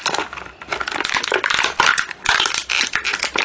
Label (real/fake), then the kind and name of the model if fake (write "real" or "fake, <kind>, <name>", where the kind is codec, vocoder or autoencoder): real